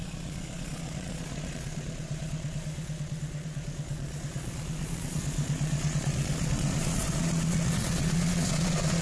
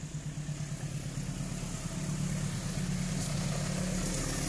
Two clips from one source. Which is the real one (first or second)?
second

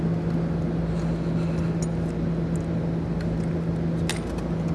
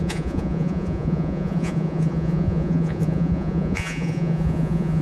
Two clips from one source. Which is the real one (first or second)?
first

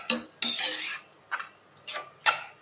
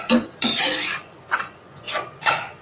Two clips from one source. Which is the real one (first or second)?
first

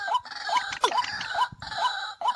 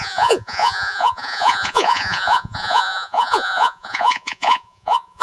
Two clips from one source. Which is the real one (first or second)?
first